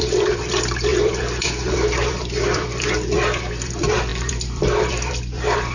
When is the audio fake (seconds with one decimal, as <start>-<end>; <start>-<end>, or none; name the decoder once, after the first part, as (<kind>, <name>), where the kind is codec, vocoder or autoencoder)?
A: 0.0-5.7 (vocoder, BigVGAN v2)

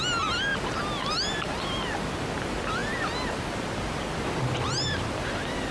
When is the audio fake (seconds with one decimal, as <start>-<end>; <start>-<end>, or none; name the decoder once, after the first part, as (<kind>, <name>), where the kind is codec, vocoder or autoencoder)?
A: none

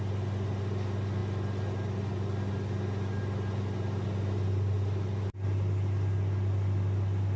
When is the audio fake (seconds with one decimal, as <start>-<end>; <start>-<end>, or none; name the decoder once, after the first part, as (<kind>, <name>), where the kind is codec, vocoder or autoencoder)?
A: none

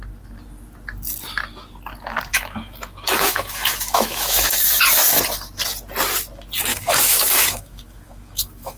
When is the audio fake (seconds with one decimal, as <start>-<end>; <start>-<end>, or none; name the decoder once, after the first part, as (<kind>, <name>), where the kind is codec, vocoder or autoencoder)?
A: 2.3-4.8 (autoencoder, DAC-VAE); 6.7-8.8

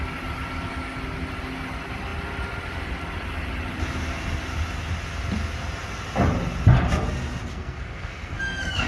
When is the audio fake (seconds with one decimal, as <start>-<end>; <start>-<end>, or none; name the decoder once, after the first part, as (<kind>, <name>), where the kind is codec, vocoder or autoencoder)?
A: 7.5-8.9 (codec, SNAC)

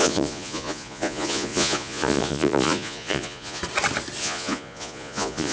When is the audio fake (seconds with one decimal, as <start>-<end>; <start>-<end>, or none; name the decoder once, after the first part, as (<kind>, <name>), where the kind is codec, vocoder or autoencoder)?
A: 0.0-3.6 (vocoder, Vocos); 4.2-5.5

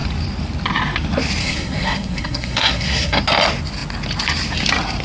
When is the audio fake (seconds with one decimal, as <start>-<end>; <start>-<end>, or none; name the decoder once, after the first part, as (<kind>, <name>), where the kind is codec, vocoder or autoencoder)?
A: 1.4-3.2 (codec, SNAC)

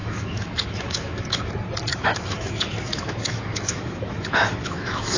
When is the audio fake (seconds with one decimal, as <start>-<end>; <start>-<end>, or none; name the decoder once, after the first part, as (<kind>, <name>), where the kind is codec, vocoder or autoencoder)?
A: 0.0-1.5 (autoencoder, DAC-VAE); 1.9-5.2